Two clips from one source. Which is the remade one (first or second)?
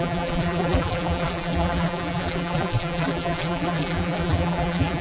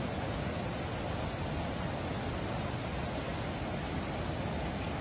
first